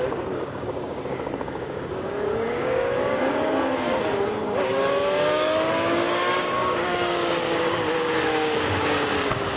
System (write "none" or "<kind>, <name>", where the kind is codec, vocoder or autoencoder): codec, DAC